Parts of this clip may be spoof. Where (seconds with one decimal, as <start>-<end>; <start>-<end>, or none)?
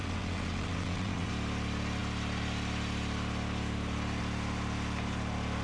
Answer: 0.0-1.3